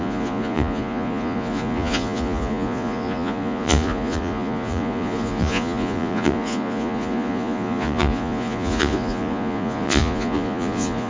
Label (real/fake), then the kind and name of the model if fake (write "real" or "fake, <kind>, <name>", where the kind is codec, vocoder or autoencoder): fake, vocoder, Vocos